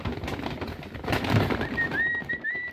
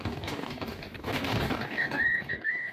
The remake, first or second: second